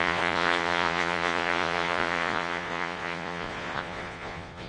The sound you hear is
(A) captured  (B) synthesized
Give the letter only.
B